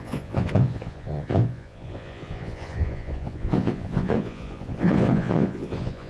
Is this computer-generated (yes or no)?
yes